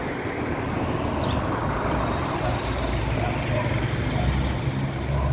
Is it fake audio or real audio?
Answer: real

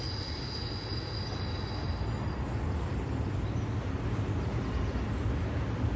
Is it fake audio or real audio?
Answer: real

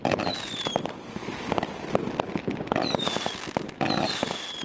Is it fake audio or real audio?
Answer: real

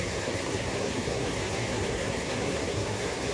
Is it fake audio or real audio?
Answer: fake